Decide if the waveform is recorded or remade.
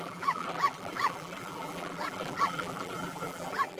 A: remade